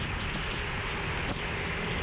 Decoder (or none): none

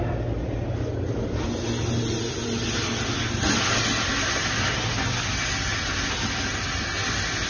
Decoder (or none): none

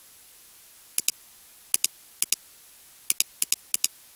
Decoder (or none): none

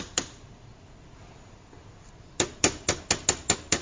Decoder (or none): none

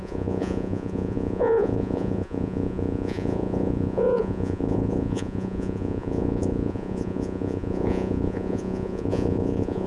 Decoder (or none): vocoder, Vocos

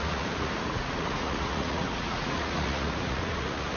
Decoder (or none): vocoder, Vocos